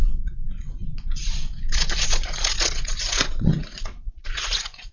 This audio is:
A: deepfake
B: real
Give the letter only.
A